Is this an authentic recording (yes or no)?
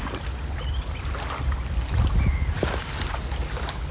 yes